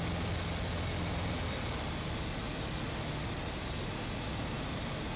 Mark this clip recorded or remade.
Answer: recorded